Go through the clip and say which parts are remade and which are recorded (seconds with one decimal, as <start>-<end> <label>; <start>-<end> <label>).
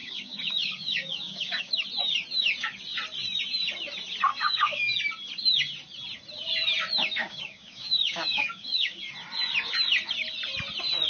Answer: 0.0-1.7 remade; 1.7-4.3 recorded; 4.3-4.9 remade; 4.9-7.2 recorded; 7.2-9.0 remade; 9.0-11.1 recorded